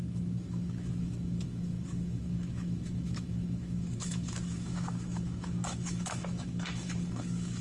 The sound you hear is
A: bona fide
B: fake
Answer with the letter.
B